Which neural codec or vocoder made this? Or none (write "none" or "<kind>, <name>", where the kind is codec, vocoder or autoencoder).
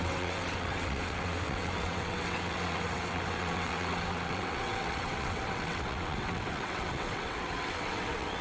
vocoder, WaveNeXt